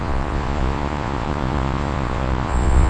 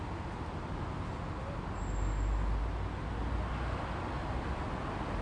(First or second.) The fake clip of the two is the first